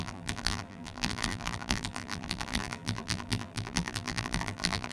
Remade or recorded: remade